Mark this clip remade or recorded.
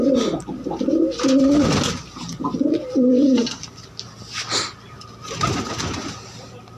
recorded